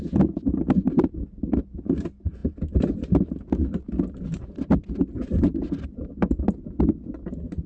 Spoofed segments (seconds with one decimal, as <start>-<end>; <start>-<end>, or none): none